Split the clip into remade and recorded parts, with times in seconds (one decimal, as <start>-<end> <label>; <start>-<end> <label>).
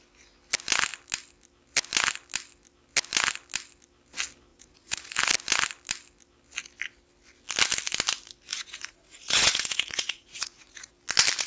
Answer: 0.0-4.5 recorded; 4.5-5.1 remade; 5.1-8.5 recorded; 8.5-10.9 remade; 10.9-11.5 recorded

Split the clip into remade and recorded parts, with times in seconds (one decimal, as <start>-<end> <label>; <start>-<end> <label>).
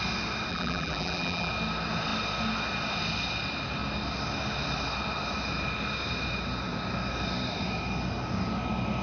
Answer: 0.0-0.5 recorded; 0.5-1.5 remade; 1.5-9.0 recorded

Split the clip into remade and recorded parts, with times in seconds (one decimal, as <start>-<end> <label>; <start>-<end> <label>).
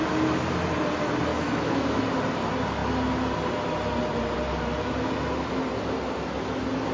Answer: 0.0-1.3 recorded; 1.3-2.0 remade; 2.0-6.9 recorded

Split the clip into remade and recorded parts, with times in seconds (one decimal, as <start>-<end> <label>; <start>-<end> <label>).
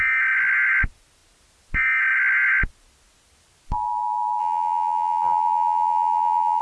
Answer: 0.0-4.4 recorded; 4.4-6.6 remade